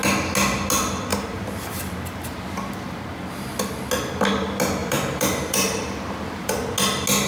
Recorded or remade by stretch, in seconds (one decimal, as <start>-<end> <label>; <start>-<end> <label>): 0.0-1.1 recorded; 1.1-1.8 remade; 1.8-4.8 recorded; 4.8-6.5 remade; 6.5-7.3 recorded